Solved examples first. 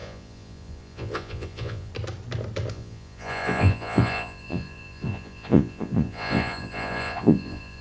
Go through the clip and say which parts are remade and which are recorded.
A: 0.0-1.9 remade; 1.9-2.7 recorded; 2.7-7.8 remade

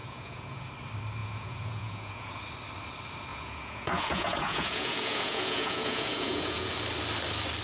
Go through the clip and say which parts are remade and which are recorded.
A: 0.0-0.7 remade; 0.7-1.2 recorded; 1.2-2.3 remade; 2.3-3.3 recorded; 3.3-6.7 remade; 6.7-7.6 recorded

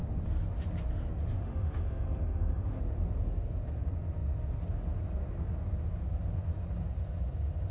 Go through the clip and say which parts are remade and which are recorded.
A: 0.0-1.3 recorded; 1.3-2.8 remade; 2.8-7.7 recorded

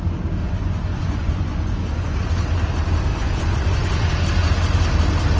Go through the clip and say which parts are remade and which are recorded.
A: 0.0-0.4 recorded; 0.4-2.2 remade; 2.2-3.1 recorded; 3.1-4.1 remade; 4.1-5.4 recorded